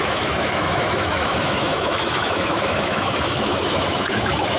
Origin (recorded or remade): remade